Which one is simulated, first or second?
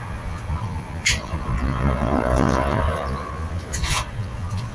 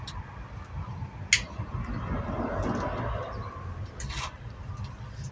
first